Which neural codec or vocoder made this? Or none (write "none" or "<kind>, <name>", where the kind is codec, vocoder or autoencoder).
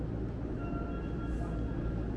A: none